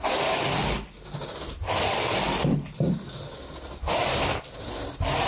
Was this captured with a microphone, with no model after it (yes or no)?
yes